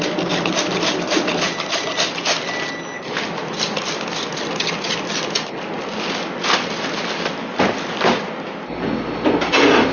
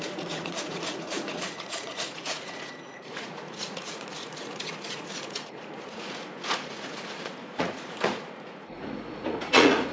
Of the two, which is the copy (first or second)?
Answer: second